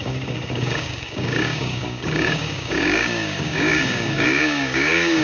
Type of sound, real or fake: fake